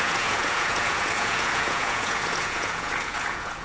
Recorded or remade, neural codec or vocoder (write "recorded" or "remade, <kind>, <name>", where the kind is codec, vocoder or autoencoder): remade, vocoder, Vocos